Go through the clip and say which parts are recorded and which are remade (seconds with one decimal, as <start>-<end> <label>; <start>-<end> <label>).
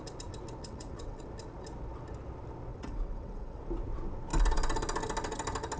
0.0-0.6 recorded; 0.6-1.2 remade; 1.2-2.7 recorded; 2.7-3.6 remade; 3.6-5.8 recorded